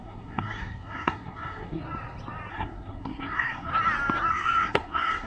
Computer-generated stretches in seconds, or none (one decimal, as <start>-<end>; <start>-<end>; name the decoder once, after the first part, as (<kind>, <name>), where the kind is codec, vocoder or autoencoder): 0.0-1.8 (codec, SNAC); 2.5-3.7; 4.3-5.3

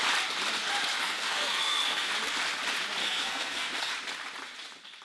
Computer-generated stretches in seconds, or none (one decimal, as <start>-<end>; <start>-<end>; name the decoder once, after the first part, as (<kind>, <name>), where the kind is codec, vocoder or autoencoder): 1.0-2.1 (codec, SNAC); 3.0-3.9